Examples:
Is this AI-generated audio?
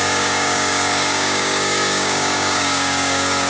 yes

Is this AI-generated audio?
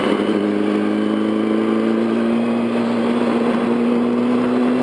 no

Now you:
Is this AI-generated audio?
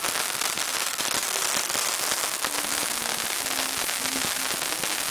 no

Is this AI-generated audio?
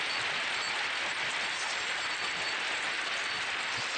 no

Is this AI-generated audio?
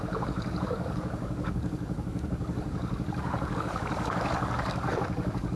yes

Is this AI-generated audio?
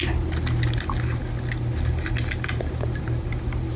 no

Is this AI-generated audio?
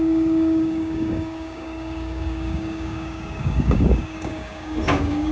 yes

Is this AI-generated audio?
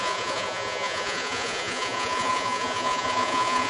yes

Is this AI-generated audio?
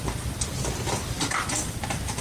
no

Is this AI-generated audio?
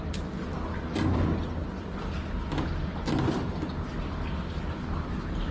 no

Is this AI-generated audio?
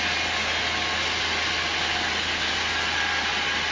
no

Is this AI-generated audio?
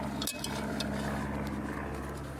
no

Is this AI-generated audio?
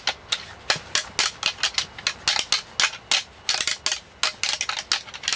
no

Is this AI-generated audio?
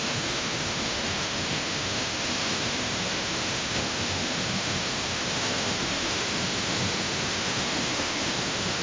yes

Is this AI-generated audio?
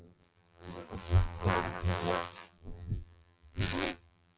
yes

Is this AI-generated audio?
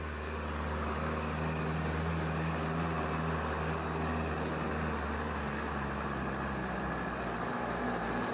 no